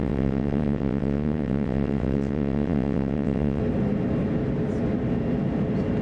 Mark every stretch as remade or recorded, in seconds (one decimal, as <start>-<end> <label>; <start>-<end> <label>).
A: 0.0-3.6 remade; 3.6-6.0 recorded